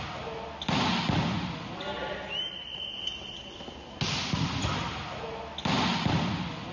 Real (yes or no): yes